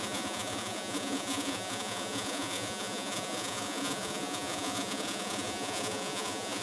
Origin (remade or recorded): remade